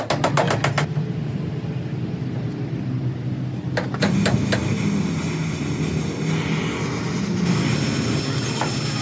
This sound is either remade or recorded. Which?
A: recorded